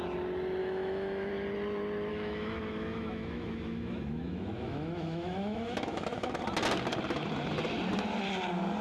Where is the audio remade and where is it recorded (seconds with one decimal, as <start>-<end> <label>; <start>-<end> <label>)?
0.0-0.6 recorded; 0.6-1.3 remade; 1.3-2.1 recorded; 2.1-6.4 remade; 6.4-8.8 recorded